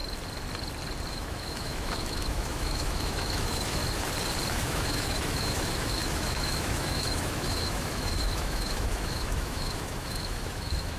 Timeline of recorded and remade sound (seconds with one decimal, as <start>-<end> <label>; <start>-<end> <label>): 0.0-1.1 recorded; 1.1-3.8 remade; 3.8-4.5 recorded; 4.5-11.0 remade